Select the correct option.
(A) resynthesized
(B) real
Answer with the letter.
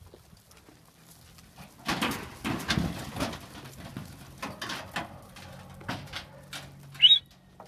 B